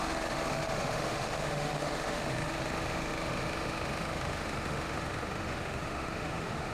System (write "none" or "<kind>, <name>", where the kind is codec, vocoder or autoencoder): autoencoder, DAC-VAE